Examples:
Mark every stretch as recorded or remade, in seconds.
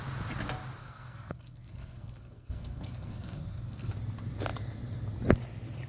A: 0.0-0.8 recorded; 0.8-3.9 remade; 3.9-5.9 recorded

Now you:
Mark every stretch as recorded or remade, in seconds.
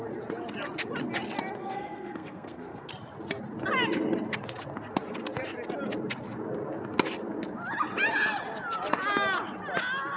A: 0.0-1.6 recorded; 1.6-2.9 remade; 2.9-10.2 recorded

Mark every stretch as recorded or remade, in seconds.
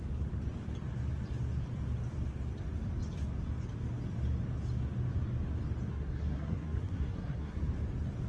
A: 0.0-5.9 recorded; 5.9-7.6 remade; 7.6-8.3 recorded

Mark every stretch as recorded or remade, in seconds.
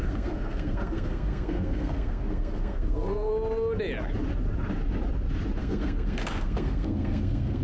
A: 0.0-3.3 remade; 3.3-5.6 recorded; 5.6-7.6 remade